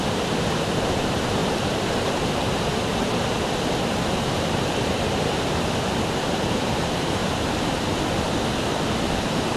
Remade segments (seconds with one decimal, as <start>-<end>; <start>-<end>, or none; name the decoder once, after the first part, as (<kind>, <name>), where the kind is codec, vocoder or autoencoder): 0.0-3.1 (vocoder, BigVGAN v2); 6.2-7.2; 9.2-9.6